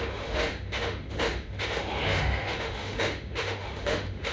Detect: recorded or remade remade